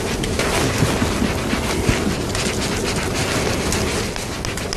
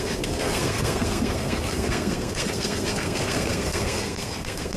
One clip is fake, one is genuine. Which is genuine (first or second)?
first